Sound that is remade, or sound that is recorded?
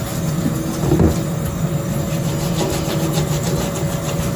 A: recorded